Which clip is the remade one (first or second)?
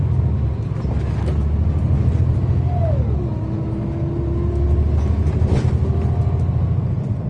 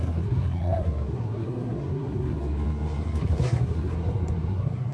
second